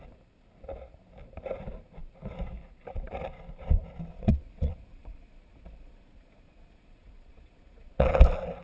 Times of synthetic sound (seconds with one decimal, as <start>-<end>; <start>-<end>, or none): 4.1-8.2